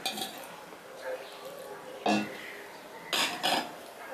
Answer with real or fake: real